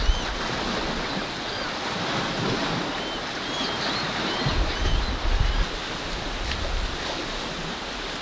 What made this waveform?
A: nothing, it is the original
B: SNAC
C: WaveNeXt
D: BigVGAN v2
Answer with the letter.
A